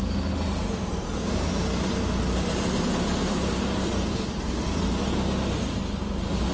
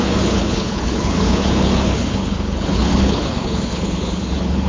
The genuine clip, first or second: first